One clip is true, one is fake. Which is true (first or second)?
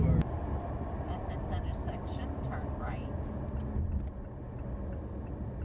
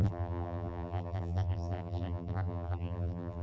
first